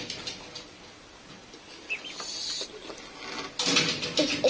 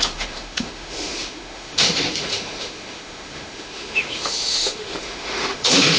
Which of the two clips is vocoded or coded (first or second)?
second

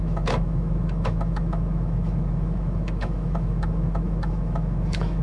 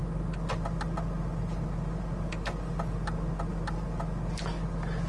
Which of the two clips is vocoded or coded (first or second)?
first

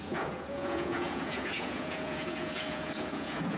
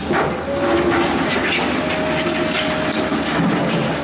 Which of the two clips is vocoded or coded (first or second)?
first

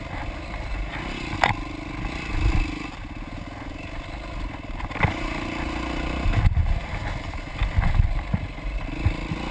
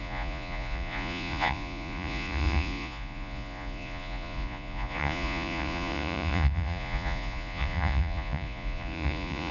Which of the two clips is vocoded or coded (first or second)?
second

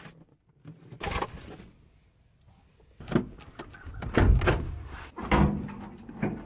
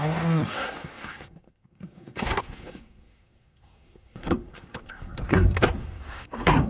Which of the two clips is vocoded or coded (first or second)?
second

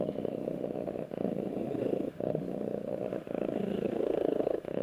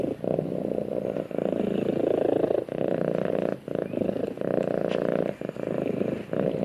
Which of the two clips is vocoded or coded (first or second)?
first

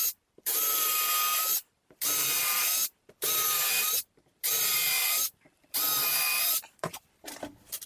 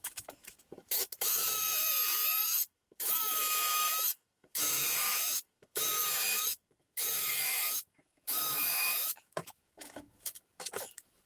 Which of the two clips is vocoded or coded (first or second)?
second